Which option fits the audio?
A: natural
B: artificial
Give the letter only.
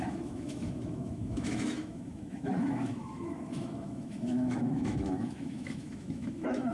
B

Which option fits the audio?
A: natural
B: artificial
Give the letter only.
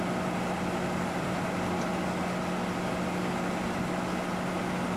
A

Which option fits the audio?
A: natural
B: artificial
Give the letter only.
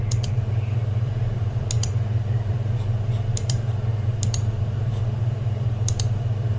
B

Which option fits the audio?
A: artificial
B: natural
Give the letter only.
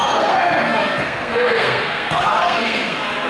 A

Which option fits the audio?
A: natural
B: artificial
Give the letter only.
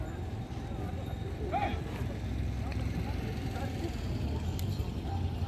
A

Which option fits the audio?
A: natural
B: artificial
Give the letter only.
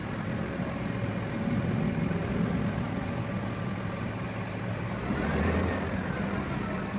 A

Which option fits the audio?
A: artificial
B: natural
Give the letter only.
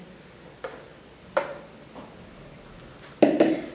B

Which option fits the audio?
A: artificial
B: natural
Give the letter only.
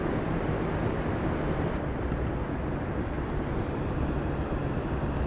B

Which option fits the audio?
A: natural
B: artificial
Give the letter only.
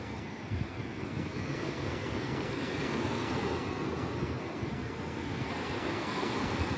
B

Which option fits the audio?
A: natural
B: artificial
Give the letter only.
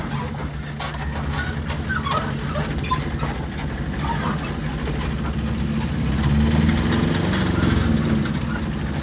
A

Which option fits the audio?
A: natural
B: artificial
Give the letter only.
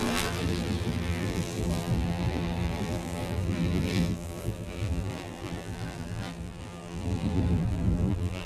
B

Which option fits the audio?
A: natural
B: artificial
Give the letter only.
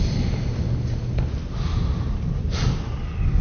A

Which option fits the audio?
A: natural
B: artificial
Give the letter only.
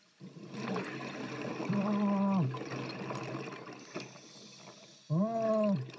A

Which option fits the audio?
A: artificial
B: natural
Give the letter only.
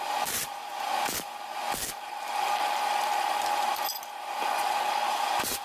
B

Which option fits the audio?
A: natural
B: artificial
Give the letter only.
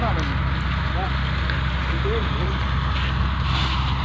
A